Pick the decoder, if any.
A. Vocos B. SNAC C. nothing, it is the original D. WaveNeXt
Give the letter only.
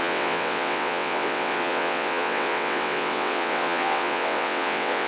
D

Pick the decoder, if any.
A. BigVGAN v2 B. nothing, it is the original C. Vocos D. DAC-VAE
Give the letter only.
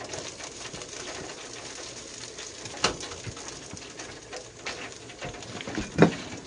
B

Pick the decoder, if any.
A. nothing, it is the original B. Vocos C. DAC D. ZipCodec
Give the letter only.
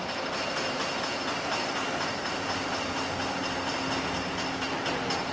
A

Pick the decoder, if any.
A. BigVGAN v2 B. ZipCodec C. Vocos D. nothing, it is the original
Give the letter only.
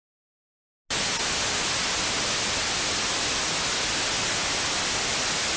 D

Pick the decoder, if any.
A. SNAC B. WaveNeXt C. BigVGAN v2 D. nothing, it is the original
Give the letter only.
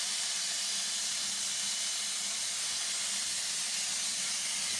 D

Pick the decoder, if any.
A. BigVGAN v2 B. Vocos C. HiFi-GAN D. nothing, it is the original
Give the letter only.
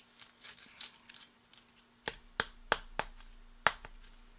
D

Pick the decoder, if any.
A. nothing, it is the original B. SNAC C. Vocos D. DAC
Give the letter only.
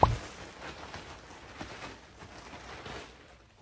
A